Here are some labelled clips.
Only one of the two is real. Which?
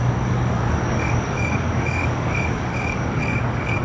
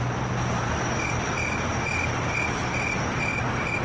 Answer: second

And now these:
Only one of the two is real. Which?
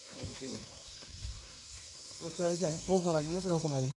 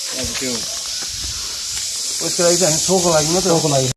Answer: second